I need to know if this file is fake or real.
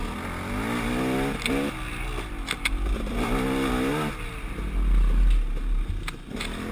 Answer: real